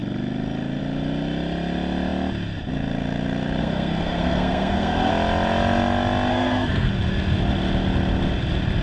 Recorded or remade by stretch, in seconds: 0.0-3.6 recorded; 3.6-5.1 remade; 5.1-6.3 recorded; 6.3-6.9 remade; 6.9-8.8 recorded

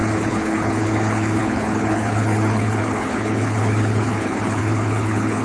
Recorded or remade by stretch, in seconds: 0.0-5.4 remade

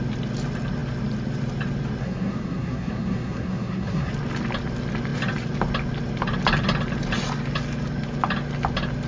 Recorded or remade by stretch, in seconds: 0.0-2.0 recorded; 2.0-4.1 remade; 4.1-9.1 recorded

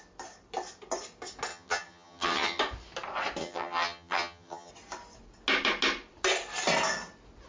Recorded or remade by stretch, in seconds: 0.0-1.5 recorded; 1.5-2.6 remade; 2.6-3.4 recorded; 3.4-4.7 remade; 4.7-7.5 recorded